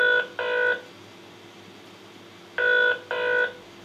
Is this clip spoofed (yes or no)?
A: no